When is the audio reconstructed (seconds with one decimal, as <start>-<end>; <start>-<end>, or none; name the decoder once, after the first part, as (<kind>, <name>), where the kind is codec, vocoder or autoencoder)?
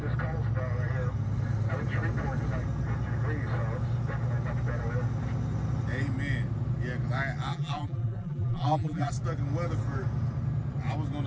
7.5-9.1 (vocoder, BigVGAN v2)